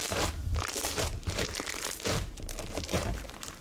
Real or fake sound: fake